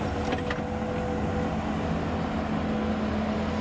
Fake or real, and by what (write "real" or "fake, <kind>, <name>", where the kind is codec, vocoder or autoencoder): real